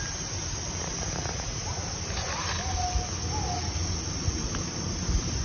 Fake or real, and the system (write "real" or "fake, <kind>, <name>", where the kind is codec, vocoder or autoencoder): real